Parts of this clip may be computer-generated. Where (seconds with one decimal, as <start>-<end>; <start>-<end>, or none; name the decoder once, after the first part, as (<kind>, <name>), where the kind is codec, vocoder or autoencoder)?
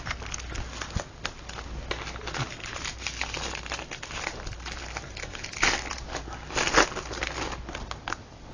none